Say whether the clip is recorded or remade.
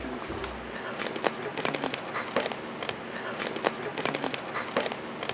recorded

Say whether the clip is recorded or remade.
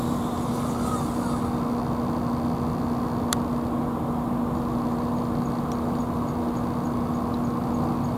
recorded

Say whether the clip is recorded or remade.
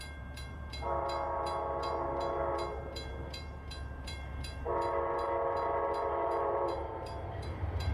remade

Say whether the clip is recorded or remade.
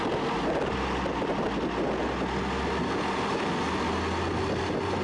recorded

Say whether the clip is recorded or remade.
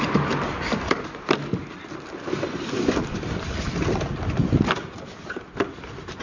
recorded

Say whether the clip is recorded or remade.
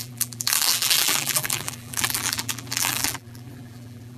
remade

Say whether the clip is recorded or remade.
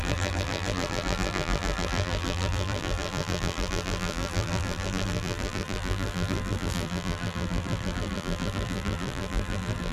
remade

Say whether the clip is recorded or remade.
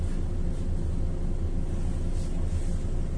recorded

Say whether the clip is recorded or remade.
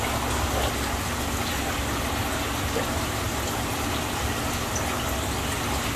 recorded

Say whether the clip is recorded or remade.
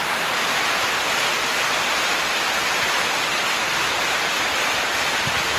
recorded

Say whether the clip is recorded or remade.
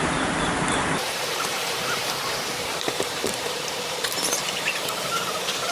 remade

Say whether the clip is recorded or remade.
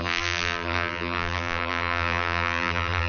remade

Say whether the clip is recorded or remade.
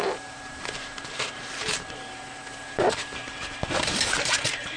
remade